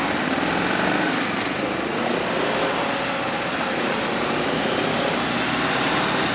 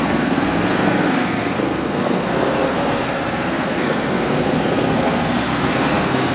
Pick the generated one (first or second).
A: second